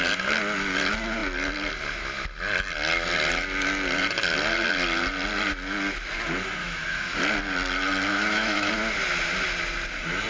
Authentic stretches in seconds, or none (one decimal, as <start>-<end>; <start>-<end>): 0.0-6.6; 7.2-8.1; 8.7-10.3